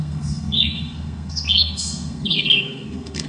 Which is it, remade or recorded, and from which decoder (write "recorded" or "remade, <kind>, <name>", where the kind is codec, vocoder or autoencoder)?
remade, codec, SNAC